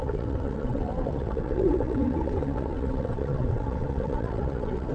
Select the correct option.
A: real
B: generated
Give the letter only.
B